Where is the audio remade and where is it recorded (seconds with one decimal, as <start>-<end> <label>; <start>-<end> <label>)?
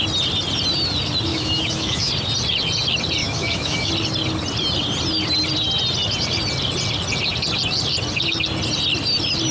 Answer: 0.0-1.3 recorded; 1.3-2.1 remade; 2.1-3.2 recorded; 3.2-3.9 remade; 3.9-9.5 recorded